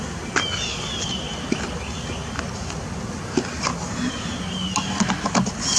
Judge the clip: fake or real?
real